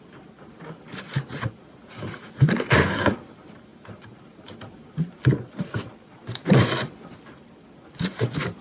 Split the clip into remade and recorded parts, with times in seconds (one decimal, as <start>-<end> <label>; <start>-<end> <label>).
0.0-3.7 recorded; 3.7-6.9 remade; 6.9-8.6 recorded